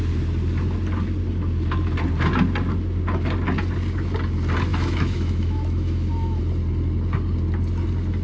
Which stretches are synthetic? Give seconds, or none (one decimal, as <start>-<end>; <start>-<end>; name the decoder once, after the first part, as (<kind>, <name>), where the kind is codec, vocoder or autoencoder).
4.7-6.4 (autoencoder, DAC-VAE)